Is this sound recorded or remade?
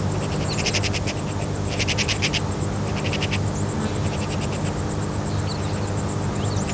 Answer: recorded